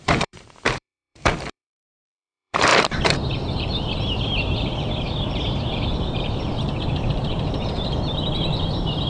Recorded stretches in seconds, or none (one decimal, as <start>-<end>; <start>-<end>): none